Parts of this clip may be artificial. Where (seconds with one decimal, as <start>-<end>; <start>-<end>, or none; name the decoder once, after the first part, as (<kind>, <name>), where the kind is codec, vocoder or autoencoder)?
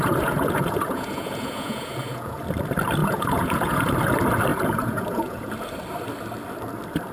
0.0-2.4 (vocoder, Vocos); 3.0-3.9; 4.5-5.5